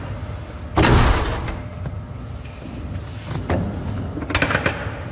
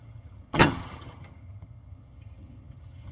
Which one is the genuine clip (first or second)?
first